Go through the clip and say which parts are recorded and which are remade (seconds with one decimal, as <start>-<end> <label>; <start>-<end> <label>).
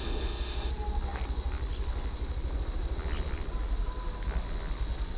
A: 0.0-0.7 remade; 0.7-5.2 recorded